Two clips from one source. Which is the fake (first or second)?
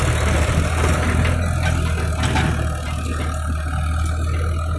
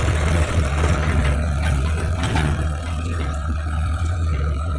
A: second